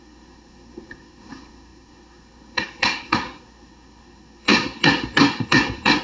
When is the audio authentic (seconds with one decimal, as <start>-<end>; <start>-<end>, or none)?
none

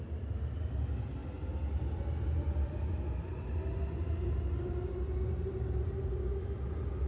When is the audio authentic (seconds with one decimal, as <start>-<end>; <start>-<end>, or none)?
0.0-7.1